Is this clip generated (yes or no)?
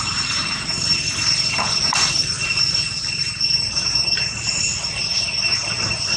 yes